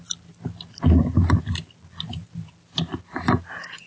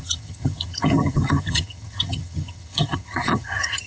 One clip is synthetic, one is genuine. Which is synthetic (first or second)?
second